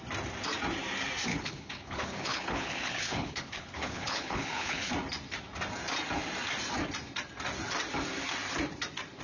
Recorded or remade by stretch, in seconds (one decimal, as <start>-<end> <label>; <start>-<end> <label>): 0.0-1.3 recorded; 1.3-4.9 remade; 4.9-9.2 recorded